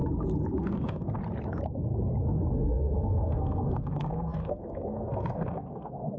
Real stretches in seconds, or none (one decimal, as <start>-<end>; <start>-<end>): 0.0-0.6; 1.2-2.7